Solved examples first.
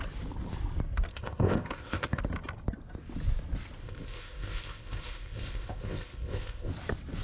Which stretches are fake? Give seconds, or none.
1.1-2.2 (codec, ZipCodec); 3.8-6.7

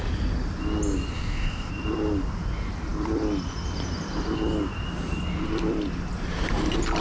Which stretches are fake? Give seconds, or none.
1.1-1.7 (codec, ZipCodec)

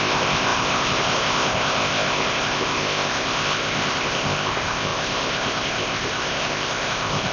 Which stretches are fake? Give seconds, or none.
0.0-7.3 (codec, ZipCodec)

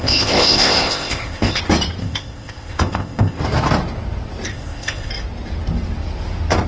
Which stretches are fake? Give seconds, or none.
0.0-1.6 (codec, ZipCodec); 2.0-3.4; 4.5-5.1